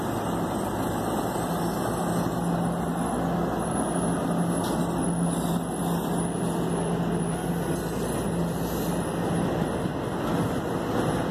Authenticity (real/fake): real